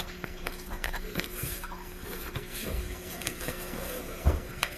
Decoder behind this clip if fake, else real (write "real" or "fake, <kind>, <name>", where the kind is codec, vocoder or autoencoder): fake, codec, SNAC